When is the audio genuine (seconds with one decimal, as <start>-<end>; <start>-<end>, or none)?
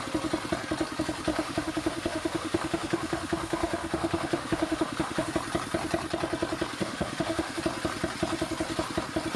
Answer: 0.0-1.3; 5.3-6.8; 7.6-9.4